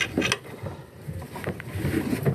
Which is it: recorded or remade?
recorded